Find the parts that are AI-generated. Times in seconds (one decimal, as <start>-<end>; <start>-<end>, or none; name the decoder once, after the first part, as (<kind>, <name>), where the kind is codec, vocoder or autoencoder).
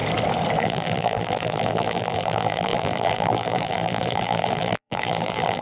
0.6-5.6 (vocoder, BigVGAN v2)